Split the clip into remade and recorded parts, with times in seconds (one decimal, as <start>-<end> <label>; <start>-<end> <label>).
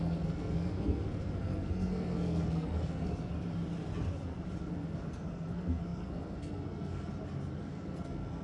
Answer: 0.0-3.3 remade; 3.3-4.6 recorded; 4.6-7.1 remade; 7.1-7.6 recorded; 7.6-8.4 remade